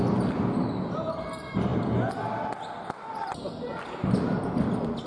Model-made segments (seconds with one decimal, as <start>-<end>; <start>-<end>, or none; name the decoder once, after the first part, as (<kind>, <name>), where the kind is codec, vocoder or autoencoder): none